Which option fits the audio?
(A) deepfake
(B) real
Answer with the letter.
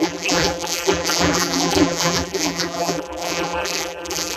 A